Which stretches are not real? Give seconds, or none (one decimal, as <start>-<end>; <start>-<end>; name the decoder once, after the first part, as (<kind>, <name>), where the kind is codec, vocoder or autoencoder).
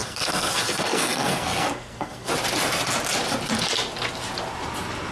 0.0-2.3 (codec, SNAC)